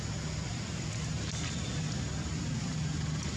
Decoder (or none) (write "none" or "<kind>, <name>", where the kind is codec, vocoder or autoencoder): none